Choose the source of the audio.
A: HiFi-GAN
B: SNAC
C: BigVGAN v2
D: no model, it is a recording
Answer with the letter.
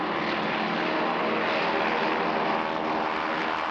D